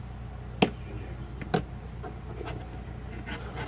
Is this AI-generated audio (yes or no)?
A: no